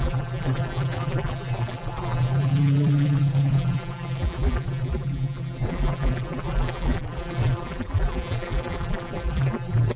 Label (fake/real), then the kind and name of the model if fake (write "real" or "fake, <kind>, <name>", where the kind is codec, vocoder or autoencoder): fake, vocoder, BigVGAN v2